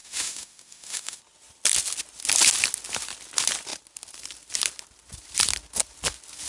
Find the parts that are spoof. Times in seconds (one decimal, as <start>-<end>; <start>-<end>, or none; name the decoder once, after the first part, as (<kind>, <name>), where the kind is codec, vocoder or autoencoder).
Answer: 0.0-1.2 (autoencoder, DAC-VAE)

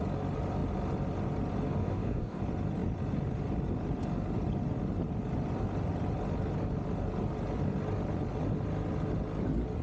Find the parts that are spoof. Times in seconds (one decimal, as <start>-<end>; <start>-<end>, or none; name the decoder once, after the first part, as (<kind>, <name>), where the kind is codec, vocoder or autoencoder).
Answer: 1.8-2.4 (codec, DAC)

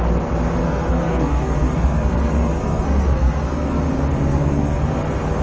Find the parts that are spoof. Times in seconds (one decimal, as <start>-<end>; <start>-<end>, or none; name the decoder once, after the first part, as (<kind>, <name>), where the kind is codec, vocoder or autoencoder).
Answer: 0.6-3.8 (codec, SNAC); 4.3-4.9

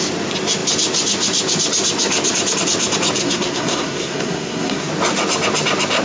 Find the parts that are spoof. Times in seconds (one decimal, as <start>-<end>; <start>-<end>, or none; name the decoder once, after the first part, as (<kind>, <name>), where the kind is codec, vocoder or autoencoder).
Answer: 3.2-4.9 (codec, SNAC)

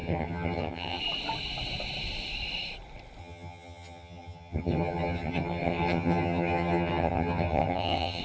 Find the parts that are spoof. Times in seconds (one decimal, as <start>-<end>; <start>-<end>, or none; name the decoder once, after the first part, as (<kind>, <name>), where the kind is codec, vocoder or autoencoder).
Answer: 0.0-1.0 (vocoder, HiFi-GAN); 3.2-8.2

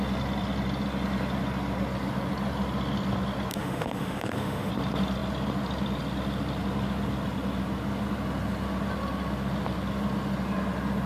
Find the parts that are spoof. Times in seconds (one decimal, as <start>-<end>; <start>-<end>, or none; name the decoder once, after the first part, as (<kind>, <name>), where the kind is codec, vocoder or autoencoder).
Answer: 3.5-4.7 (autoencoder, DAC-VAE)